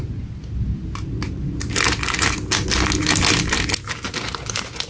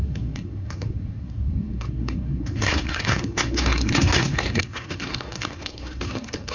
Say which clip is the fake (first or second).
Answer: second